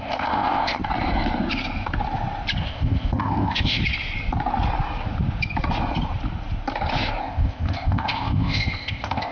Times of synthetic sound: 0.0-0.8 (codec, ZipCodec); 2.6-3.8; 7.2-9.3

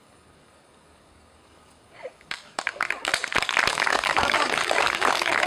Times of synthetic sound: 0.0-3.1 (codec, DAC); 3.7-5.5

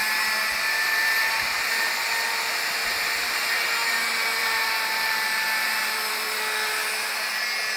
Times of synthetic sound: 4.4-7.3 (vocoder, BigVGAN v2)

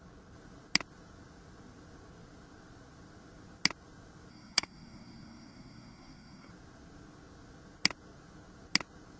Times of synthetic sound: 4.3-6.5 (codec, SNAC)

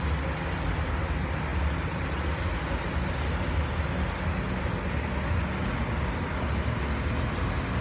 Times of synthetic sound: none